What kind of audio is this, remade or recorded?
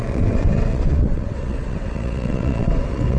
remade